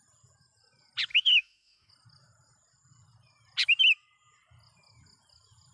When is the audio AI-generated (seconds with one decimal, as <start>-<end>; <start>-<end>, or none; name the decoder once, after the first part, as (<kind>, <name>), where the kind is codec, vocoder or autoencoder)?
1.1-1.9 (autoencoder, DAC-VAE)